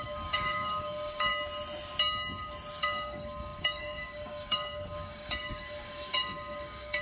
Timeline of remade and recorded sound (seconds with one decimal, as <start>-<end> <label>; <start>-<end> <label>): 0.0-1.3 remade; 1.3-2.8 recorded; 2.8-7.0 remade